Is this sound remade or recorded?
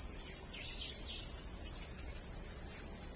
recorded